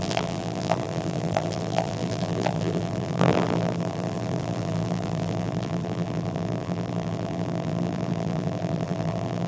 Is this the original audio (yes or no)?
no